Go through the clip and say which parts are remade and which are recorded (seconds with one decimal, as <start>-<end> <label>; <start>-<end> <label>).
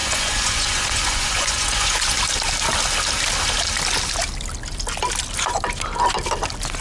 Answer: 0.0-2.2 remade; 2.2-6.8 recorded